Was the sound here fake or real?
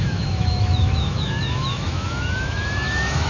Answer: fake